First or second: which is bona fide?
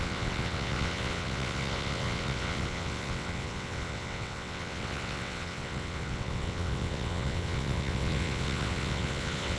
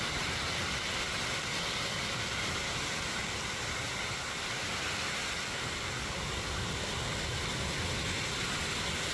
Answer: second